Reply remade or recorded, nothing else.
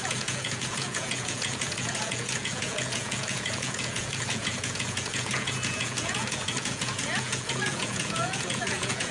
remade